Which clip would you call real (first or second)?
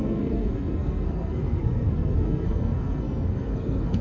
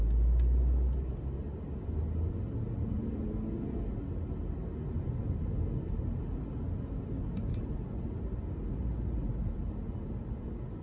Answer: second